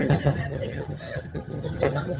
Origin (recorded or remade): remade